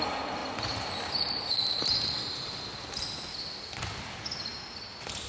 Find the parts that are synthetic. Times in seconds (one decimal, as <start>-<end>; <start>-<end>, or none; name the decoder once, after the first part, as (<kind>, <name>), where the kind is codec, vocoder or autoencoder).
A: 0.4-2.2 (vocoder, BigVGAN v2); 4.5-5.3